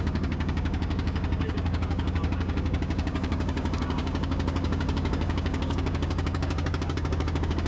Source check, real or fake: fake